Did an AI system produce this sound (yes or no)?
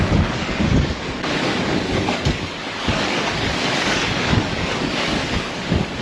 yes